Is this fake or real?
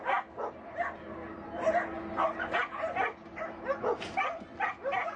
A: real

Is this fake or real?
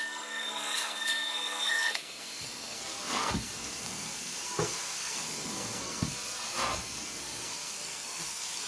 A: fake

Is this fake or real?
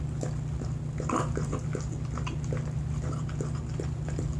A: real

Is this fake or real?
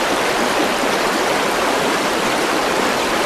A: fake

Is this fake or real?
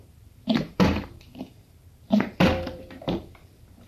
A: fake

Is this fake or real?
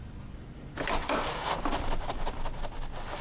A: real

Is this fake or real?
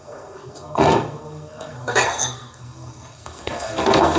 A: fake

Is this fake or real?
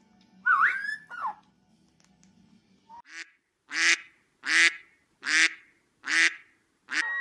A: real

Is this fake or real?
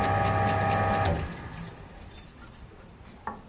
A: real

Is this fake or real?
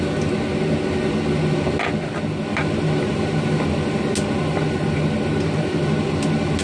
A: real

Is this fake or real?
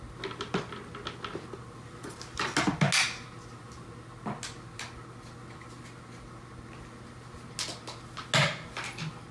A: real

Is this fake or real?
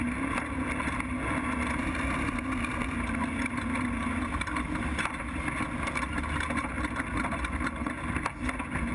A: real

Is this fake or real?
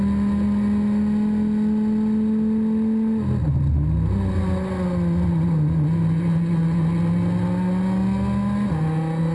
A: real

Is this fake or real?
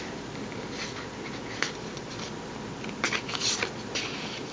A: real